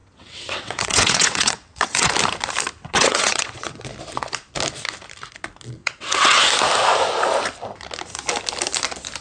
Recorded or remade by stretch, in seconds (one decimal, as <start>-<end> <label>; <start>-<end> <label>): 0.0-2.1 remade; 2.1-2.8 recorded; 2.8-3.9 remade; 3.9-5.8 recorded; 5.8-6.4 remade; 6.4-9.2 recorded